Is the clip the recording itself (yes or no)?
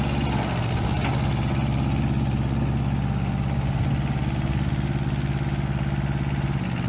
yes